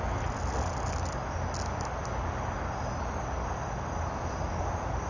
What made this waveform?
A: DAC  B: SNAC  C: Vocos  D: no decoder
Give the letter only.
D